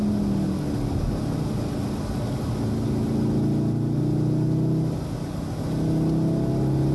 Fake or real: real